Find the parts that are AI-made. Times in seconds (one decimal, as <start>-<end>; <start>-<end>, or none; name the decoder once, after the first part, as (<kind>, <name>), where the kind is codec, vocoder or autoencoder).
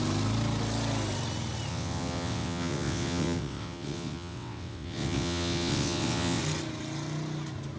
1.7-6.4 (vocoder, WaveNeXt)